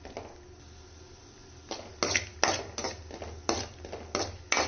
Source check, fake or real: real